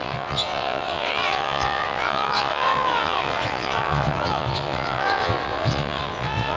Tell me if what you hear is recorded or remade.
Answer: remade